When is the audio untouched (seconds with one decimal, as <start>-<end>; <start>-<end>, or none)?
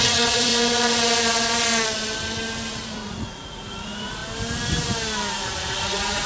0.5-2.7; 4.2-5.3